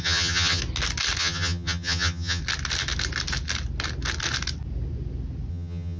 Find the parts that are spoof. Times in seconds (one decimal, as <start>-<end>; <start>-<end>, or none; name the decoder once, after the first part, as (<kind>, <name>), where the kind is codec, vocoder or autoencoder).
0.0-0.6 (vocoder, HiFi-GAN); 1.2-2.4; 5.5-6.0